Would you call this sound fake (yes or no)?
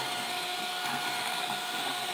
yes